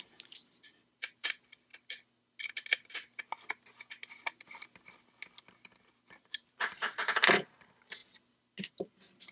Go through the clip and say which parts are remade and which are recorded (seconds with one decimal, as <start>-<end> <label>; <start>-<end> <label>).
0.0-1.7 remade; 1.7-5.4 recorded; 5.4-8.0 remade; 8.0-8.7 recorded; 8.7-9.3 remade